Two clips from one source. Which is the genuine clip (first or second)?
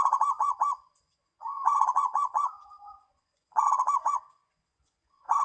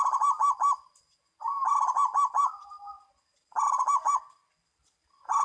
second